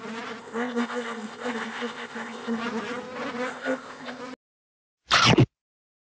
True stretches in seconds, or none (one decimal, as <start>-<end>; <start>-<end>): 0.0-0.4; 2.6-3.5; 4.2-6.0